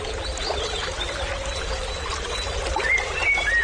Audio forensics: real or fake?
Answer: real